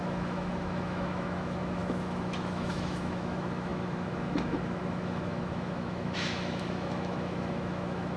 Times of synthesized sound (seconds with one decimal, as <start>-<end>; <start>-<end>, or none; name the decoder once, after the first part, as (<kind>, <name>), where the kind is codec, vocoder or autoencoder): 0.0-8.2 (autoencoder, DAC-VAE)